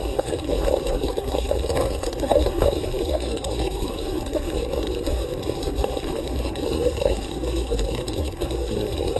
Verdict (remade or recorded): remade